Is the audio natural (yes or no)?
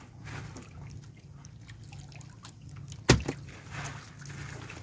yes